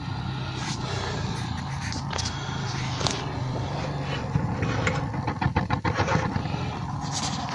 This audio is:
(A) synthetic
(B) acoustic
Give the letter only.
B